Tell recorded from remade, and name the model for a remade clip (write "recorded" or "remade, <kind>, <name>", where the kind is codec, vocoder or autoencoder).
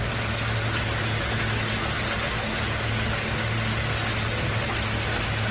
recorded